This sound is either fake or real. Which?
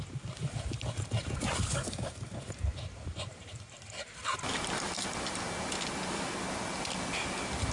real